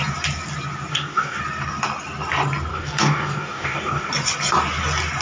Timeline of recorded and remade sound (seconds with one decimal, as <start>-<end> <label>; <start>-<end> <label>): 0.0-0.9 recorded; 0.9-1.4 remade; 1.4-2.7 recorded; 2.7-4.1 remade; 4.1-5.2 recorded